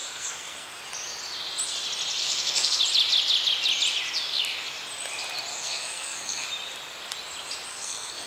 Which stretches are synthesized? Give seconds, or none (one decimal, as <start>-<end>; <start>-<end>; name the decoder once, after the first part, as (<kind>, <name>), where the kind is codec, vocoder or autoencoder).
0.0-0.8 (codec, SNAC); 2.2-2.8; 5.5-6.5; 7.7-8.3

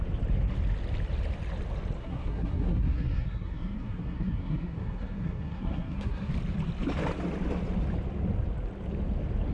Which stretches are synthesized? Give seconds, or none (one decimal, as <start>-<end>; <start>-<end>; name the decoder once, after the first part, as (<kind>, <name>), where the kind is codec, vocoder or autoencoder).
2.0-6.3 (codec, SNAC)

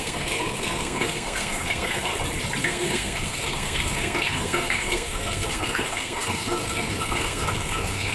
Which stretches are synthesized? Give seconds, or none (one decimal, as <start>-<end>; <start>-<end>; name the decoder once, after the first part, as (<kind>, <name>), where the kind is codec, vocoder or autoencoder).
0.0-2.1 (codec, SNAC); 2.6-8.1

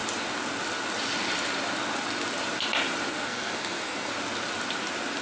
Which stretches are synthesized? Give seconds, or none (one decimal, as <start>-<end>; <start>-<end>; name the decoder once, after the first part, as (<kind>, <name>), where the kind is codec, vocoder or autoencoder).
3.1-4.1 (codec, SNAC)

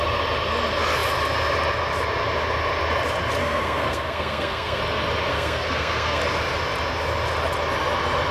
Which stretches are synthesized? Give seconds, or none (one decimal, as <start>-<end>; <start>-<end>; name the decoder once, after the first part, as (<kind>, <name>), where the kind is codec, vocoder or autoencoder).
3.4-4.8 (codec, SNAC); 5.3-6.2